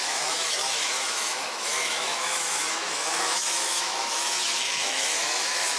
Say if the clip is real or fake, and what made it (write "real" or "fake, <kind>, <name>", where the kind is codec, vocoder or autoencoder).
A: fake, autoencoder, DAC-VAE